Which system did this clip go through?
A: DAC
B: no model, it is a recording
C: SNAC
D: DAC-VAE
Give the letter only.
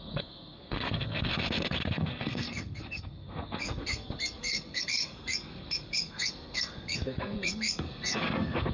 C